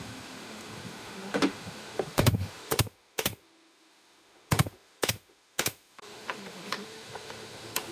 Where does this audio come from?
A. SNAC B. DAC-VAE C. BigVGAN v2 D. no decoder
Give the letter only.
B